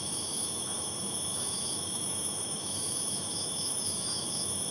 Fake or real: fake